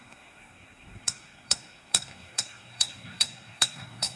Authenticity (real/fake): fake